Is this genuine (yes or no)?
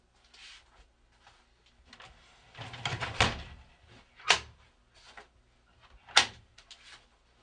yes